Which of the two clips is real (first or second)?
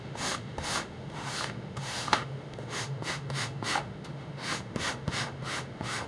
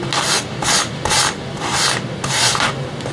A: second